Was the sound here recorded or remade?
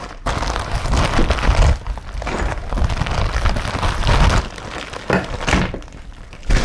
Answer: recorded